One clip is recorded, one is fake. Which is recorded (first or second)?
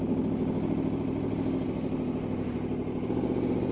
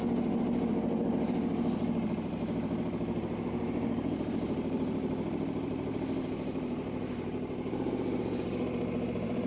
first